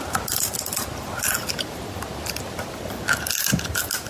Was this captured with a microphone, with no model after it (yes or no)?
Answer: yes